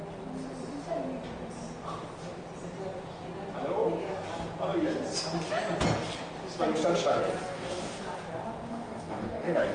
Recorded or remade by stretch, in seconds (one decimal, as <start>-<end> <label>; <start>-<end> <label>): 0.0-7.4 recorded; 7.4-8.0 remade; 8.0-8.7 recorded; 8.7-9.7 remade